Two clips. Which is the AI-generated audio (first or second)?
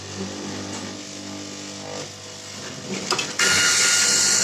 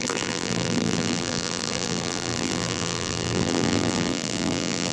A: second